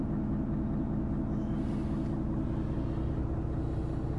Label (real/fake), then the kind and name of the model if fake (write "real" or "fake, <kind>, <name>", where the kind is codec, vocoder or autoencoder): real